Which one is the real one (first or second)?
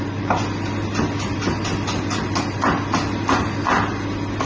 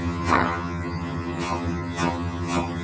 first